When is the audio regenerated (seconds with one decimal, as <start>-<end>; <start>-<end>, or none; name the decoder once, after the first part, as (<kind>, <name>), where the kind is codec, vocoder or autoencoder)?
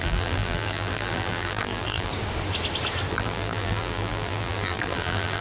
0.0-2.1 (vocoder, BigVGAN v2); 3.1-5.4